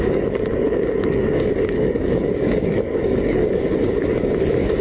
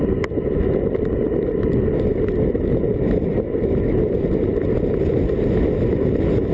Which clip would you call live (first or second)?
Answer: second